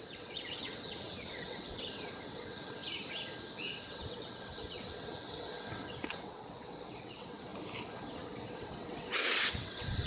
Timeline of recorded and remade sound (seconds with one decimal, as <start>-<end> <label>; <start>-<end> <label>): 0.0-2.8 remade; 2.8-3.6 recorded; 3.6-7.5 remade; 7.5-8.1 recorded; 8.1-10.1 remade